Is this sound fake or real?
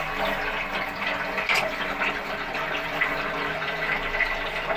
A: real